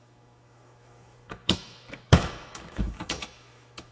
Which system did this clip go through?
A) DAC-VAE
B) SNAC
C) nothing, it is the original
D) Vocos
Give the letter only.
A